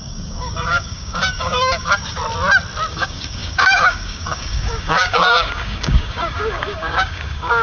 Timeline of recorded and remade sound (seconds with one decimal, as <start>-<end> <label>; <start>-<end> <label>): 0.0-2.2 remade; 2.2-2.9 recorded; 2.9-7.6 remade